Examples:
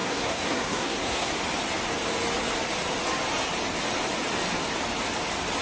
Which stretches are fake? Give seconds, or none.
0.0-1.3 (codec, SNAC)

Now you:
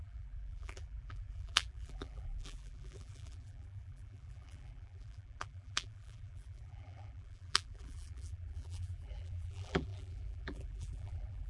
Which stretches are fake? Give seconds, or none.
0.0-11.5 (vocoder, BigVGAN v2)

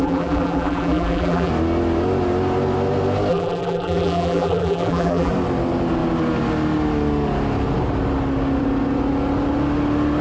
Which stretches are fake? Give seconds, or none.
0.0-1.5 (vocoder, BigVGAN v2); 3.3-5.3